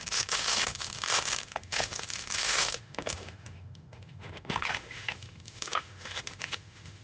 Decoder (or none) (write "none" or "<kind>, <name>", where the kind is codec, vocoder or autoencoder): autoencoder, DAC-VAE